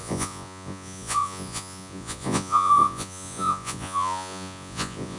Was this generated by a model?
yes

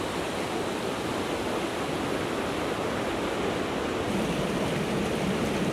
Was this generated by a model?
no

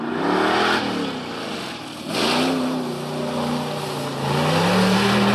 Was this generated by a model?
no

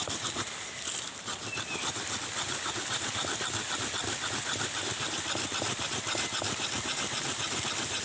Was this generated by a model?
no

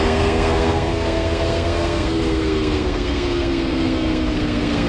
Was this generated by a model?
yes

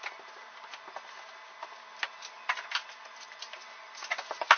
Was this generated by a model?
no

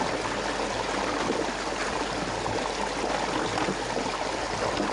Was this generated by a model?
no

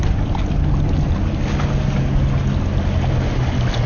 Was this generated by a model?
no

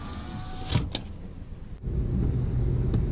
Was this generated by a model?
no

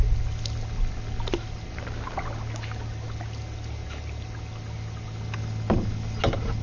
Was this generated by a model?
no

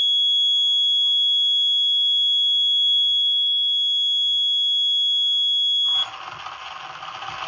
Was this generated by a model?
no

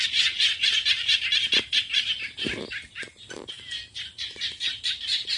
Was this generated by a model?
no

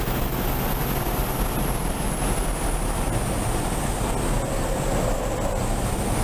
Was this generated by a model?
no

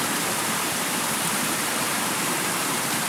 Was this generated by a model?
yes